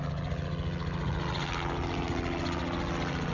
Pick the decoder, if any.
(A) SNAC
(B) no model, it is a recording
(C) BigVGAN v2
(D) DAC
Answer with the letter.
B